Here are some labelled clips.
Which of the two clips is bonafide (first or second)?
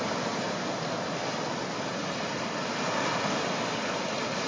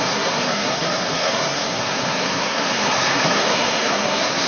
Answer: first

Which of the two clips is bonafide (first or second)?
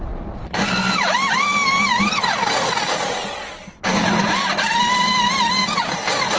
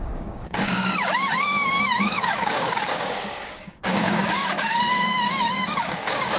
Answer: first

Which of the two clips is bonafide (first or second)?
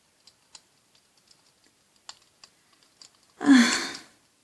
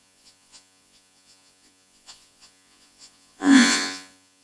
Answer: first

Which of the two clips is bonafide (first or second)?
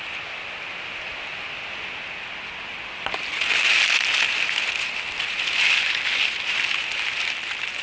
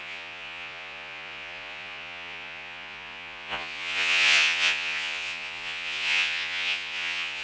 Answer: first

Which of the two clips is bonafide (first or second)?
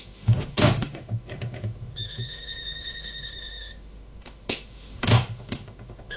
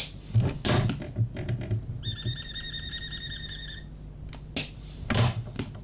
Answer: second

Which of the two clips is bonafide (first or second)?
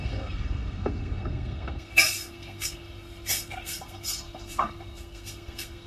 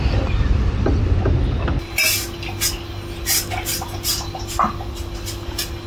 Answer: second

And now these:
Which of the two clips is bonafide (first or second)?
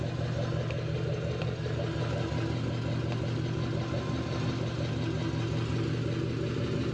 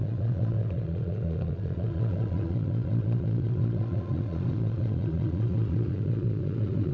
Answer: first